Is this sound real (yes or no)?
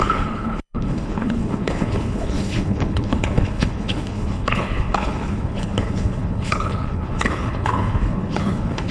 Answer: no